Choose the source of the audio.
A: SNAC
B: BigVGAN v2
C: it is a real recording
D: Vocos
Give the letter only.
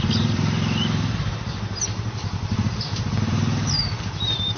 B